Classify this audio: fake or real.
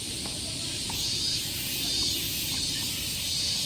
real